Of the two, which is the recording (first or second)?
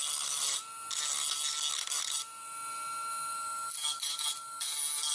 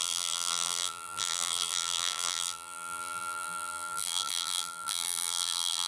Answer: first